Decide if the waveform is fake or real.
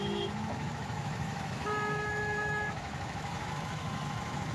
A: fake